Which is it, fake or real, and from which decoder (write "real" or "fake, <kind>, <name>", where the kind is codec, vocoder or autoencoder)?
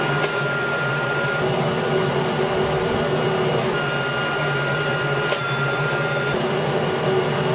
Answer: real